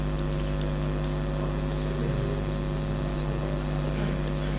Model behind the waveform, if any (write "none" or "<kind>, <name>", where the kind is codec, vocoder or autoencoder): none